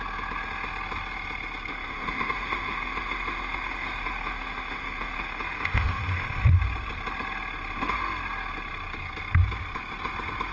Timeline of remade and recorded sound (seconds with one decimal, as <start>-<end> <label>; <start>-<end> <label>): 0.0-1.7 recorded; 1.7-6.4 remade; 6.4-10.5 recorded

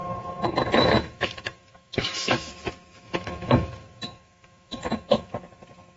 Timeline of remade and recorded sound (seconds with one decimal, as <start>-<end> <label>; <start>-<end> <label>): 0.0-2.5 remade; 2.5-3.0 recorded; 3.0-5.3 remade; 5.3-6.0 recorded

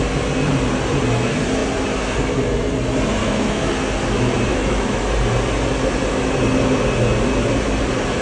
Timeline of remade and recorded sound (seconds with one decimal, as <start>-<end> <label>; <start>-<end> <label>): 0.0-3.2 recorded; 3.2-3.7 remade; 3.7-4.5 recorded; 4.5-5.0 remade; 5.0-8.2 recorded

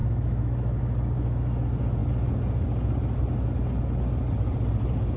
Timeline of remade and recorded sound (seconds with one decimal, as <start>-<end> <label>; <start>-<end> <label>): 0.0-0.8 remade; 0.8-5.2 recorded

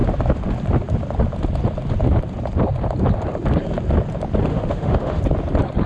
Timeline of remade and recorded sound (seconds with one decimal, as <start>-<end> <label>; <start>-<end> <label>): 0.0-4.5 recorded; 4.5-5.2 remade; 5.2-5.9 recorded

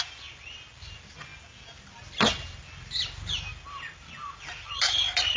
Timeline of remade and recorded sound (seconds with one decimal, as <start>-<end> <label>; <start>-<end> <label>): 0.0-5.4 recorded